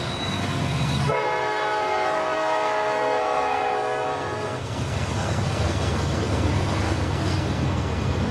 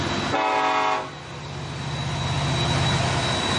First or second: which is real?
second